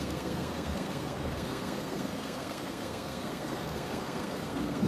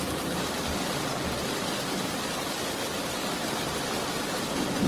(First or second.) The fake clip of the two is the first